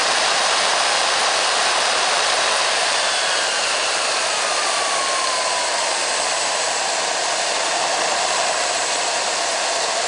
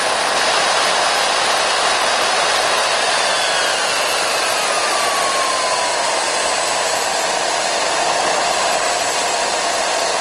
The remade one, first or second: first